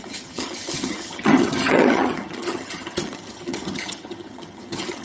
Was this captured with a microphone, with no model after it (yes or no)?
no